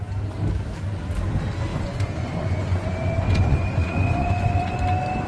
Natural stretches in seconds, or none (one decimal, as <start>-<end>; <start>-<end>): 0.0-1.7; 4.8-5.3